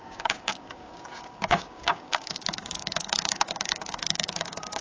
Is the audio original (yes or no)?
no